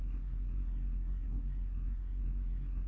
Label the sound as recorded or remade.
remade